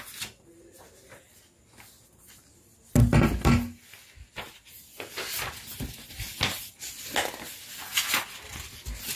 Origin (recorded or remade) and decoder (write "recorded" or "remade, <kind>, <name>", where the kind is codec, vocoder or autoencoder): recorded